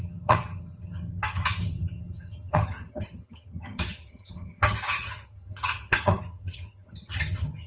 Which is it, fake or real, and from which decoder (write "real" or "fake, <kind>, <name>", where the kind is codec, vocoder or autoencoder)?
fake, vocoder, HiFi-GAN